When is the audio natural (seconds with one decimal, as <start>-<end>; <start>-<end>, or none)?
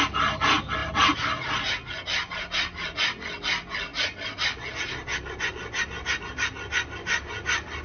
0.0-7.8